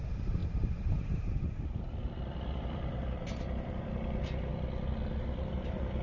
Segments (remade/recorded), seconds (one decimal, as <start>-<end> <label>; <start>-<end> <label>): 0.0-4.5 remade; 4.5-5.2 recorded; 5.2-6.0 remade